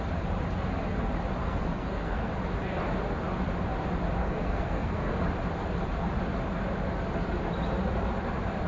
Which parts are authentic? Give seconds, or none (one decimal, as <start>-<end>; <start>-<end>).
0.0-1.4; 2.3-4.2; 5.1-8.7